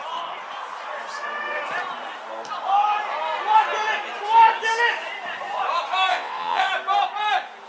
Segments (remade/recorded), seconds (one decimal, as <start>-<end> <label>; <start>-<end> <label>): 0.0-6.1 recorded; 6.1-6.7 remade; 6.7-7.7 recorded